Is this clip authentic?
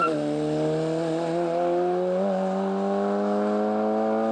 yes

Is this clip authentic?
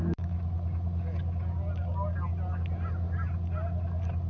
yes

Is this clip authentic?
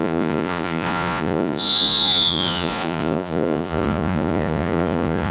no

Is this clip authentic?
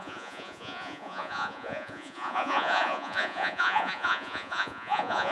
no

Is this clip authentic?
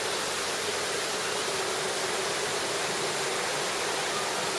yes